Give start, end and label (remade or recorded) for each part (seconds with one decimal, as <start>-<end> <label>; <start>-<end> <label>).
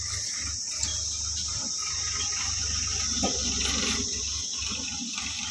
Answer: 0.0-5.5 recorded